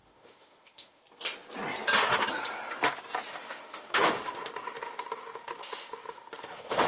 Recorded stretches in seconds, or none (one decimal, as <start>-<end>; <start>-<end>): 1.0-3.3